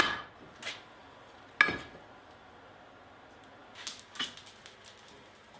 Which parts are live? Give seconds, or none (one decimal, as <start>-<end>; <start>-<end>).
0.0-5.6

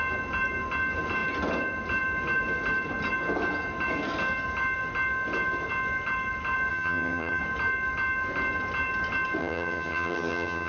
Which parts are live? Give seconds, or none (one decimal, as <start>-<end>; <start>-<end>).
0.0-6.7; 7.4-9.4

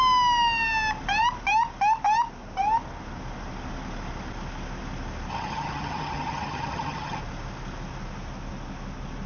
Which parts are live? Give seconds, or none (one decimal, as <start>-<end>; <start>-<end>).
0.0-5.3; 7.2-9.3